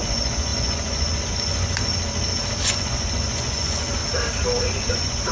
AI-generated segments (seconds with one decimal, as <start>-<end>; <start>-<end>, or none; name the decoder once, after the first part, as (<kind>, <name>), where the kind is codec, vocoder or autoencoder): 0.0-1.9 (vocoder, Vocos); 2.6-4.0; 4.6-5.3